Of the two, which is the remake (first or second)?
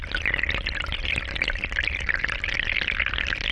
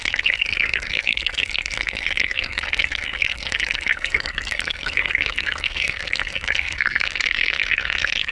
second